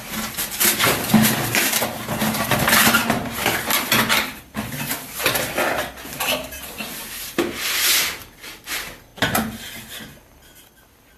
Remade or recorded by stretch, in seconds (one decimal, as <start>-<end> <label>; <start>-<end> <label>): 0.0-11.2 recorded